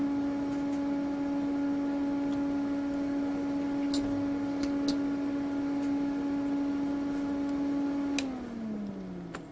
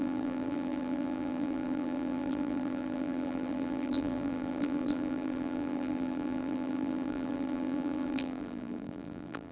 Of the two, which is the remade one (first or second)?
second